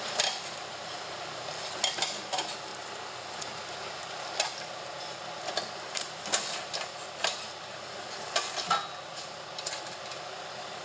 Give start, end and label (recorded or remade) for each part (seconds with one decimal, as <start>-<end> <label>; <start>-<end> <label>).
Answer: 0.0-10.8 recorded